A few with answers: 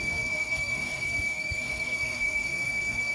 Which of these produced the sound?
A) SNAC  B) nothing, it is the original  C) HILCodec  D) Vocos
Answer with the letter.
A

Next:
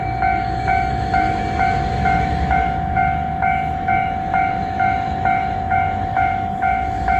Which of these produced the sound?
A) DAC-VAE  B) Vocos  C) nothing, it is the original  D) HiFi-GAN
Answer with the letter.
A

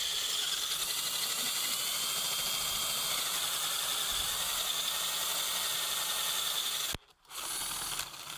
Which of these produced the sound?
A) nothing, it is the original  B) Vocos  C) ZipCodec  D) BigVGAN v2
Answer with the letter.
A